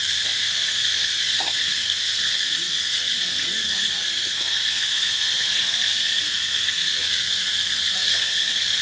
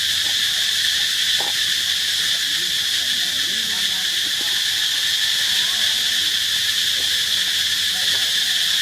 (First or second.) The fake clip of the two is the first